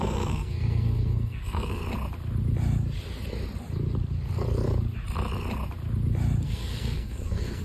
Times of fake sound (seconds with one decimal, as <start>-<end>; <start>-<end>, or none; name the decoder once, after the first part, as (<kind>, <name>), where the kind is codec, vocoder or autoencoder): 0.0-1.8 (codec, SNAC); 6.4-7.6